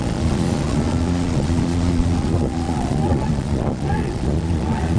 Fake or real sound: fake